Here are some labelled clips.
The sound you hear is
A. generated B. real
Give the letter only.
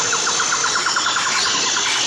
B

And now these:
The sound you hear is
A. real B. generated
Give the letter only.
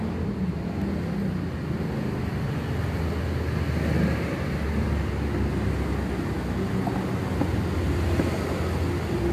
A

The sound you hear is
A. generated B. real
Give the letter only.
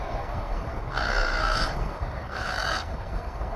A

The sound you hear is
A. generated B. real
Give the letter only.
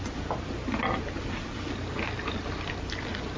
B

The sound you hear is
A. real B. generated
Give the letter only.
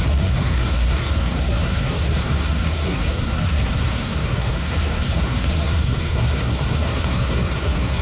B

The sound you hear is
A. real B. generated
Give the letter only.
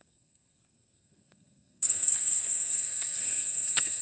B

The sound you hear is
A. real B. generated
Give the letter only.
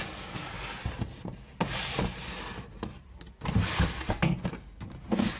A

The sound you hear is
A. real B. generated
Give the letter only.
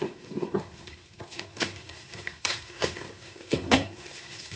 B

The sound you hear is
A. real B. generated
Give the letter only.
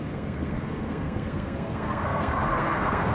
B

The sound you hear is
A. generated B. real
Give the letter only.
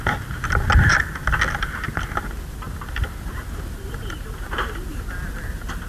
B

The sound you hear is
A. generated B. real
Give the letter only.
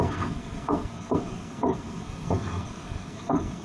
A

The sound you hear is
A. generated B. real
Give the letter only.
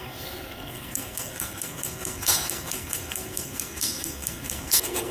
A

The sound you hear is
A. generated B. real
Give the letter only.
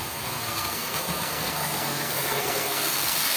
A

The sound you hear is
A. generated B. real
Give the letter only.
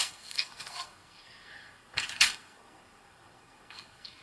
A